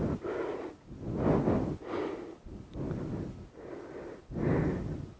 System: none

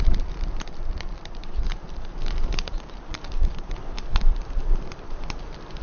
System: vocoder, BigVGAN v2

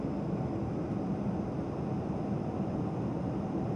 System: none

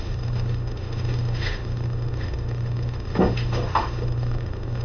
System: autoencoder, DAC-VAE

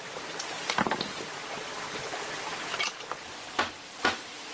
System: none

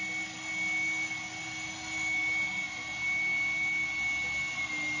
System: none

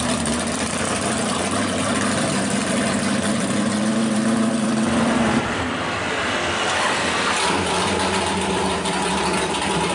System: vocoder, BigVGAN v2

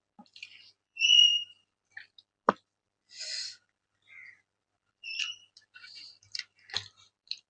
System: vocoder, BigVGAN v2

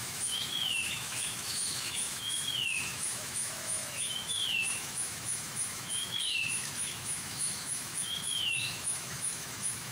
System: autoencoder, DAC-VAE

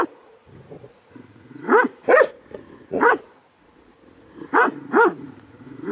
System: vocoder, Vocos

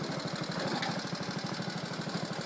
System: none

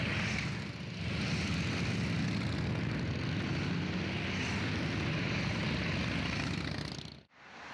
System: none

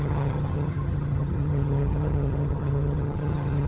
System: vocoder, HiFi-GAN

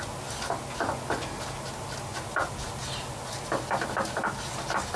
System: none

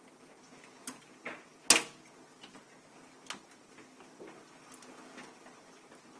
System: none